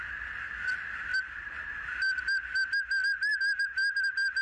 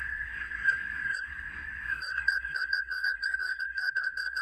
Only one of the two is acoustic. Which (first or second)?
first